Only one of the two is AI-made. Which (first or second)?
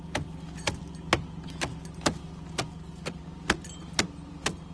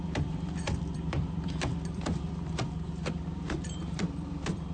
second